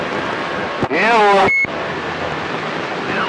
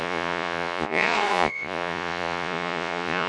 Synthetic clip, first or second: second